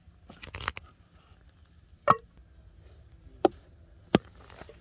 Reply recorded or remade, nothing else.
recorded